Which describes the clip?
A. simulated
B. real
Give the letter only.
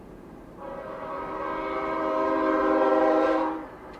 A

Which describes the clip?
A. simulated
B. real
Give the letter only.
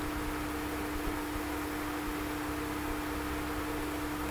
B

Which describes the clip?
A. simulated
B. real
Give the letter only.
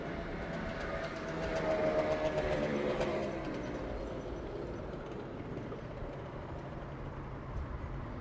B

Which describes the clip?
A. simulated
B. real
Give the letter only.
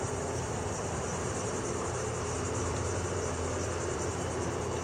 A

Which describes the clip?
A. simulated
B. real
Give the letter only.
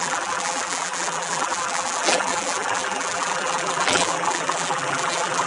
A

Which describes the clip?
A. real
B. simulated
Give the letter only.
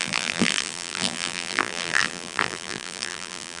B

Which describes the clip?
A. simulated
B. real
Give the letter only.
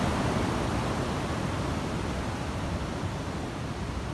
B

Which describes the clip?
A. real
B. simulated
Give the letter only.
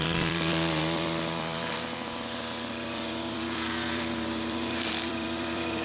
B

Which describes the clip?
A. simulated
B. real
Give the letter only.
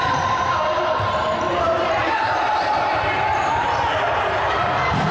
A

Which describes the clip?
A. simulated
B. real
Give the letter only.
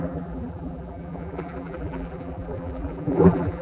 A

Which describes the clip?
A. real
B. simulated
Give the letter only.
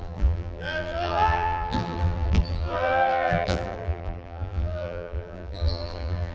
B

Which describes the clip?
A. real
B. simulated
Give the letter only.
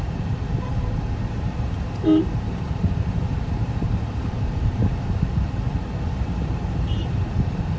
B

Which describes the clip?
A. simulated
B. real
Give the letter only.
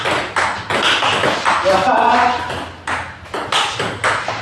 B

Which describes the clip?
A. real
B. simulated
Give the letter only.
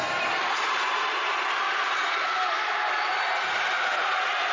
A